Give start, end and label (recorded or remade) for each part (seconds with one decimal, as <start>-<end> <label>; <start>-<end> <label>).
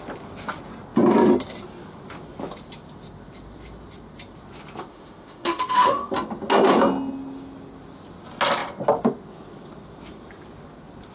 0.0-4.9 recorded; 4.9-6.1 remade; 6.1-11.1 recorded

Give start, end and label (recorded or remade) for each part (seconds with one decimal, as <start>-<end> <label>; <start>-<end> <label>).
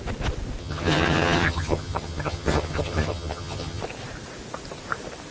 0.0-0.6 recorded; 0.6-3.8 remade; 3.8-5.3 recorded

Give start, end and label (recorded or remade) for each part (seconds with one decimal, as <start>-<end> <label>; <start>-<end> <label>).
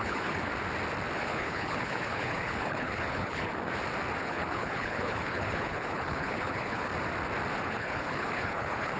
0.0-0.5 remade; 0.5-1.2 recorded; 1.2-3.5 remade; 3.5-4.2 recorded; 4.2-6.9 remade; 6.9-7.6 recorded; 7.6-9.0 remade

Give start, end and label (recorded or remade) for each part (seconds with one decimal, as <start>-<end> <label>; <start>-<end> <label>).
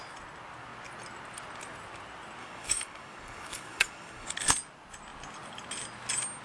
0.0-2.4 recorded; 2.4-4.3 remade; 4.3-6.4 recorded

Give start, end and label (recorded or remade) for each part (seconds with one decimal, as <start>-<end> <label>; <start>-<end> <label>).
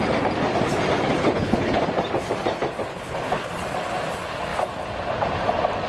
0.0-1.2 recorded; 1.2-1.8 remade; 1.8-2.9 recorded; 2.9-3.5 remade; 3.5-5.9 recorded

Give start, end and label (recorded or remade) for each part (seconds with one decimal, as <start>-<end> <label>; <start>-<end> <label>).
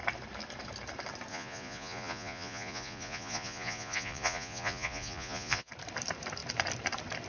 0.0-1.3 recorded; 1.3-5.7 remade; 5.7-7.3 recorded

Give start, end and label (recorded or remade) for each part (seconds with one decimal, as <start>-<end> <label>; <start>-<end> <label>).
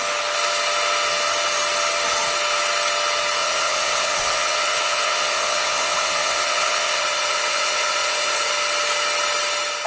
0.0-3.4 recorded; 3.4-8.5 remade; 8.5-9.9 recorded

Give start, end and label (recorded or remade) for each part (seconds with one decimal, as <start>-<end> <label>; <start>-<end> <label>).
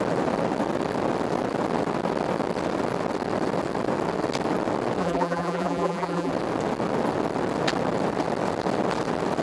0.0-5.0 recorded; 5.0-6.3 remade; 6.3-9.4 recorded